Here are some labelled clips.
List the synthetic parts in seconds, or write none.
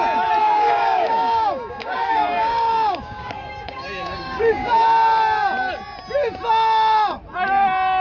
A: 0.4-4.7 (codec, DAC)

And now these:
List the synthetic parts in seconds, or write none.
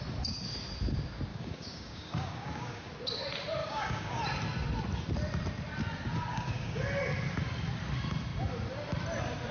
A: 1.3-2.9 (codec, DAC); 3.6-4.2; 6.3-6.8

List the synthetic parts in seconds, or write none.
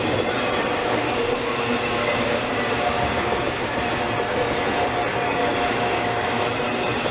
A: 0.8-4.0 (codec, DAC); 5.1-6.4